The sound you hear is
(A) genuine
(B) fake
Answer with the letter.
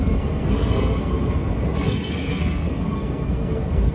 B